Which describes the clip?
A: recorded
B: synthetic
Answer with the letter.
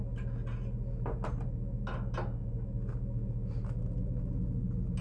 A